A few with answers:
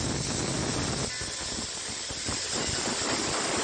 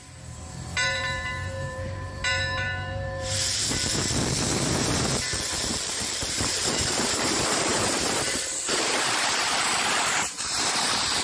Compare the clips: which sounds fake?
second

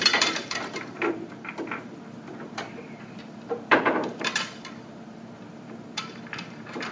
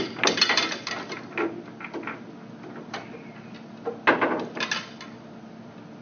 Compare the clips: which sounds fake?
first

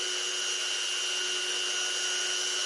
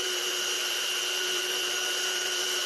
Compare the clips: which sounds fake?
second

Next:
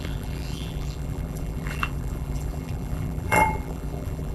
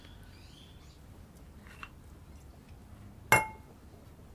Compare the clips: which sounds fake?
first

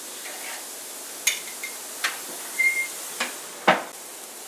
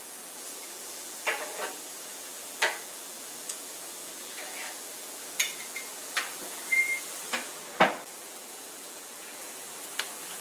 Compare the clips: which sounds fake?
second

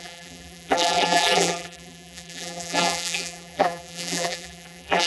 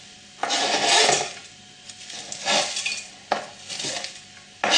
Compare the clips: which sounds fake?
first